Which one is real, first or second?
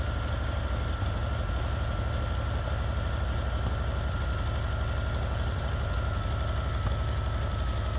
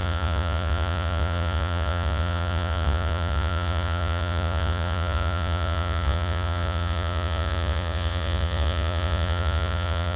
first